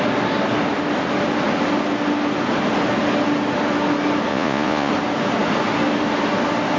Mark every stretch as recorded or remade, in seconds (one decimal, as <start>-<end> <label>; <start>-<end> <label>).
0.0-4.3 recorded; 4.3-4.9 remade; 4.9-6.8 recorded